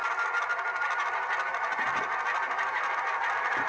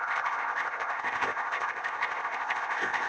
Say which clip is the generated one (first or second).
second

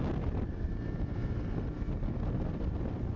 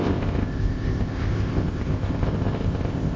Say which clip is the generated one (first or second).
second